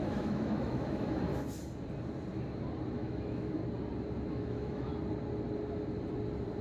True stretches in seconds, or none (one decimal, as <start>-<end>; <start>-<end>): 1.3-2.9; 3.6-4.3; 4.9-6.6